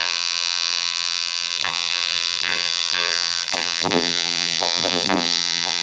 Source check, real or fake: fake